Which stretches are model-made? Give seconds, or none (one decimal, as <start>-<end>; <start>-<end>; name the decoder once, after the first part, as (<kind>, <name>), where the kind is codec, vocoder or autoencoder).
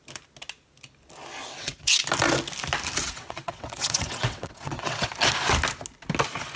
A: 1.4-2.0 (vocoder, WaveNeXt); 3.0-5.1